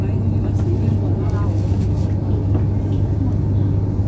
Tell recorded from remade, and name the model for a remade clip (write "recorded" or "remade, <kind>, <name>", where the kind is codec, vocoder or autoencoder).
recorded